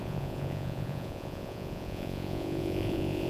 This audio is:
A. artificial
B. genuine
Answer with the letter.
A